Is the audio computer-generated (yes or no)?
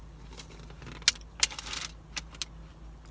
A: no